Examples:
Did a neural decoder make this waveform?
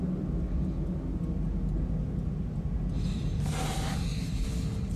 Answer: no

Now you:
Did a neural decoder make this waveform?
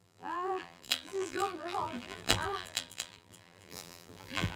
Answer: yes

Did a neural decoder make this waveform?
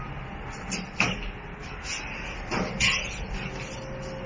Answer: no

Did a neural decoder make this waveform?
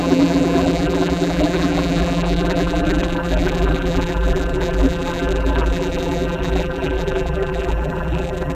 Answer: yes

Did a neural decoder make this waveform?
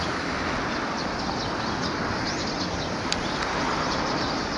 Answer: no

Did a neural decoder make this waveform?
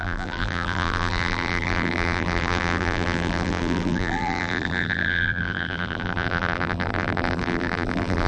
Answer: yes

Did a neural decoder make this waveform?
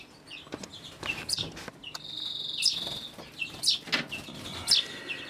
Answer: no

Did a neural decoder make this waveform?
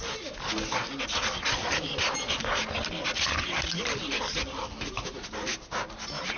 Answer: no